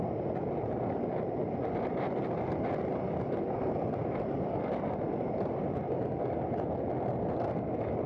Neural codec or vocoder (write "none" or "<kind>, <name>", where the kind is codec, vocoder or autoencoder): none